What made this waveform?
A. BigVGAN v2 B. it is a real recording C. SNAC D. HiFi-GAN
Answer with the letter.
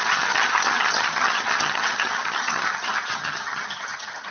D